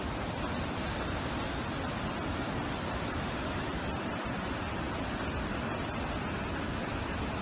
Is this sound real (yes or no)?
yes